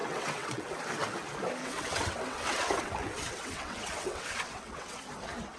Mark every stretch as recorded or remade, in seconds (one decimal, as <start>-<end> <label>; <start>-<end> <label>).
0.0-0.7 remade; 0.7-1.6 recorded; 1.6-5.0 remade; 5.0-5.6 recorded